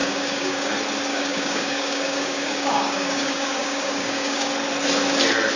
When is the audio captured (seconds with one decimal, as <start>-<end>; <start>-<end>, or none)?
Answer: 0.7-1.1; 4.5-5.6